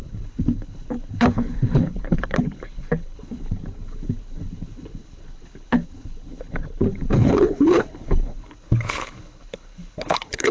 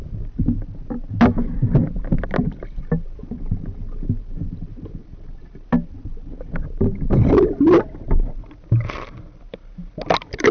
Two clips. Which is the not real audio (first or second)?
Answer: first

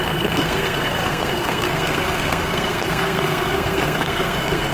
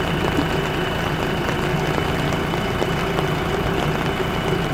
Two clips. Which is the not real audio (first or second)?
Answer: first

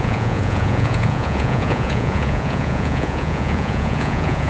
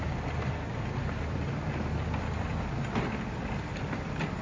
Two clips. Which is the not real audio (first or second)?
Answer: first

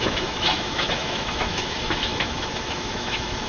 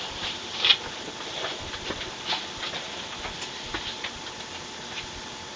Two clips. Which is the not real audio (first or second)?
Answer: first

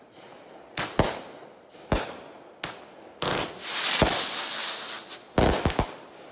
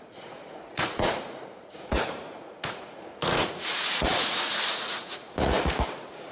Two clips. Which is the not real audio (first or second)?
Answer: second